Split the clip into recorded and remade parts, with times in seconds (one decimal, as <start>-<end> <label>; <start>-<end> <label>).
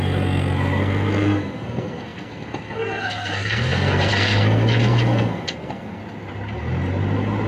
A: 0.0-6.0 remade; 6.0-7.5 recorded